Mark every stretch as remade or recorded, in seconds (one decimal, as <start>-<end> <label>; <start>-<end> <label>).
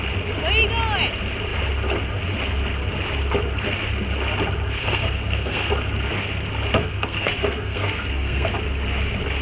0.0-4.8 recorded; 4.8-5.7 remade; 5.7-6.8 recorded; 6.8-8.5 remade; 8.5-9.4 recorded